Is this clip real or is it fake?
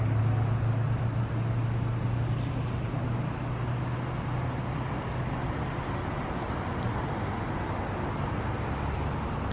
real